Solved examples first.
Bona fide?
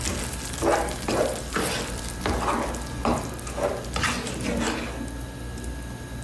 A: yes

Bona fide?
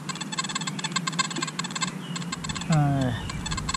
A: yes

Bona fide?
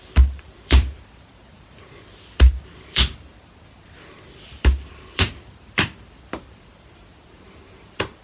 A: no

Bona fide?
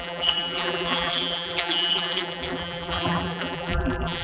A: no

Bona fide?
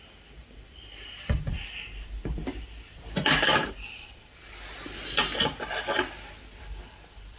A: yes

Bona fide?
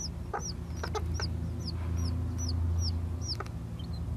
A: yes